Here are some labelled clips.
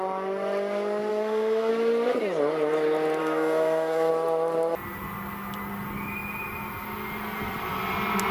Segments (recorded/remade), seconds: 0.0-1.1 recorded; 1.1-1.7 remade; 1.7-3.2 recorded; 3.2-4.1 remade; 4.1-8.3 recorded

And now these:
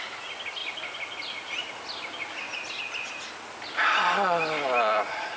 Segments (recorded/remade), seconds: 0.0-5.4 recorded

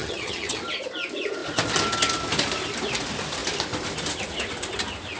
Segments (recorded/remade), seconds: 0.0-0.6 remade; 0.6-5.2 recorded